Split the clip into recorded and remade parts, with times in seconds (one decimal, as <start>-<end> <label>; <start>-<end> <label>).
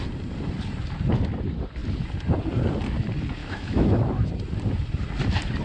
0.0-3.4 recorded; 3.4-4.3 remade; 4.3-5.6 recorded